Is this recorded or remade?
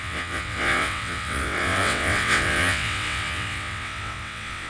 remade